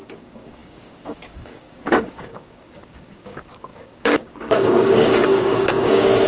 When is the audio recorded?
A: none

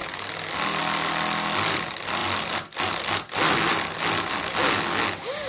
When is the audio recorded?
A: 0.0-5.5

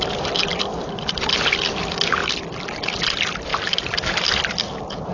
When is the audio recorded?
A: 0.0-5.1

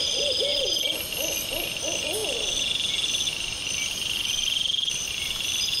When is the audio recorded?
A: 0.0-5.8

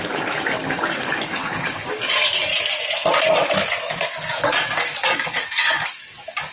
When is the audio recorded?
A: 2.5-3.8

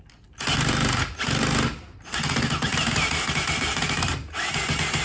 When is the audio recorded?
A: 0.0-5.0